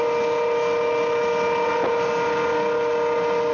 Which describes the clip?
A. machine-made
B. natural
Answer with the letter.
B